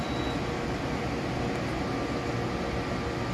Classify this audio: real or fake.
real